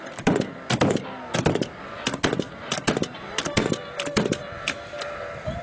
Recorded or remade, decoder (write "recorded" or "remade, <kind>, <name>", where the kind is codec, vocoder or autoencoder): recorded